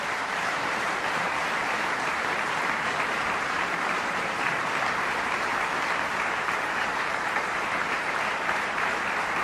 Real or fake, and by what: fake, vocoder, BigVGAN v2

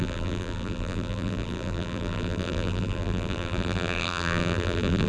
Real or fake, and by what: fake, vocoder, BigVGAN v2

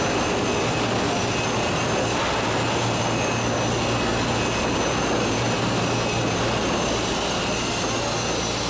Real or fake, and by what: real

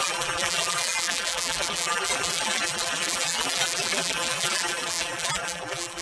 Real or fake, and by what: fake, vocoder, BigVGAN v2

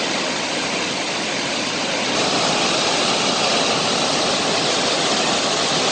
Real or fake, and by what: real